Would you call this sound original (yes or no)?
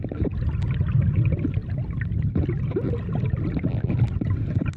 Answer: yes